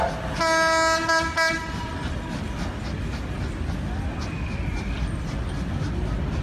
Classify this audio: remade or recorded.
recorded